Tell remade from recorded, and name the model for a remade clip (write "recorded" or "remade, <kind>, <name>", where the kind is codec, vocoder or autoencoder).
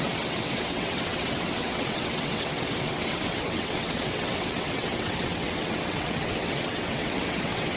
remade, vocoder, WaveNeXt